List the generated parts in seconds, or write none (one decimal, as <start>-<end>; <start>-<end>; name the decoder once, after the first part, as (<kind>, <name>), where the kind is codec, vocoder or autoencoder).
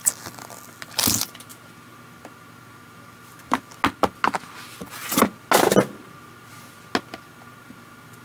none